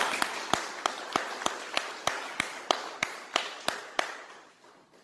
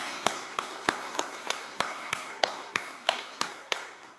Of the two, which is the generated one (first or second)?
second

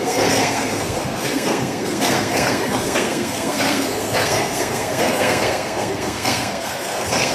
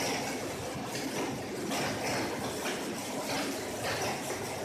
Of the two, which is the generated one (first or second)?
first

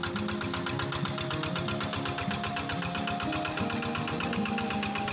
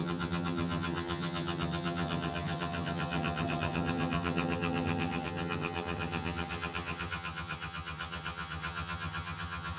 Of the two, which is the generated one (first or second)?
second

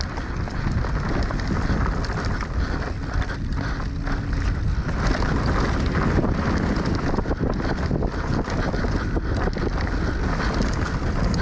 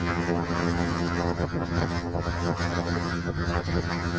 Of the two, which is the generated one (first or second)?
second